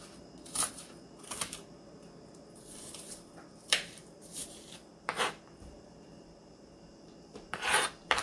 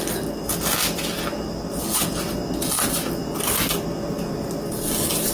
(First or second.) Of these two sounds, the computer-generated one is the first